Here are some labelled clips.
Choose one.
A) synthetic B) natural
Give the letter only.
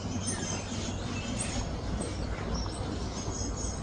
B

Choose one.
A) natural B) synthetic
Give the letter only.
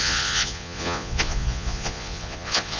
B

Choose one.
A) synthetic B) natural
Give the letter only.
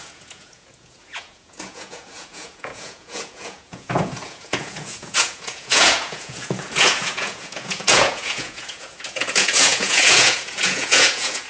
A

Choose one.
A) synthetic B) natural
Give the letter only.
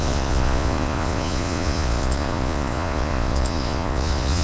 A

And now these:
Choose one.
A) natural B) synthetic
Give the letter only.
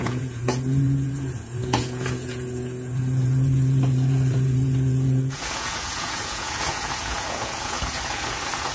B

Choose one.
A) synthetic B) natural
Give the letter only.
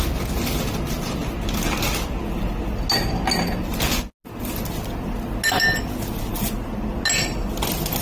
B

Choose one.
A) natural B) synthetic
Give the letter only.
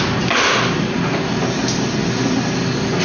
A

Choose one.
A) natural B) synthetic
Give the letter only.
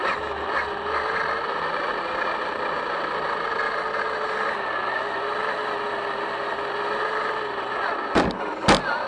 A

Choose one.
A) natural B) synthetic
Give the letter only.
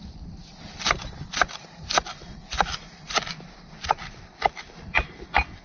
A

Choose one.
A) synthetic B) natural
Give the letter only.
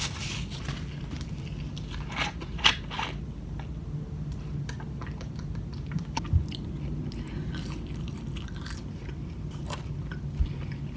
B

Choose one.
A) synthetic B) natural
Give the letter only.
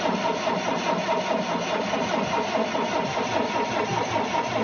B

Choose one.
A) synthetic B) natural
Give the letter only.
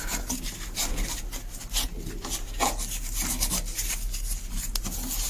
B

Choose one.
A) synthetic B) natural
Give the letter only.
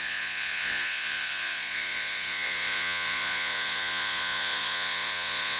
A